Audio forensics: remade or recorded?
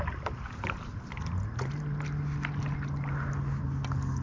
recorded